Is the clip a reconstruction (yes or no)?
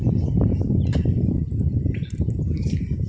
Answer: no